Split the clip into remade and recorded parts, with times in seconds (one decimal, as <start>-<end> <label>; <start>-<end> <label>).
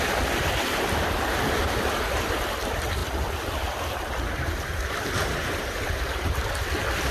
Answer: 0.0-7.1 recorded